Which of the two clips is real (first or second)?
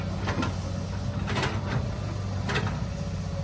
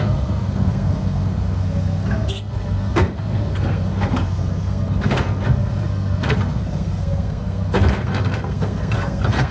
first